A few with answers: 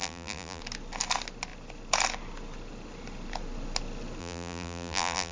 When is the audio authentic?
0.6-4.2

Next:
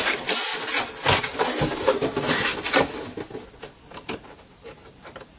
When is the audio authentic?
0.5-1.6; 2.1-4.0

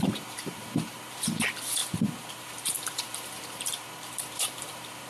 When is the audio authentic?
none

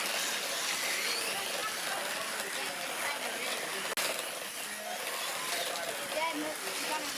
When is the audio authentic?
0.0-7.2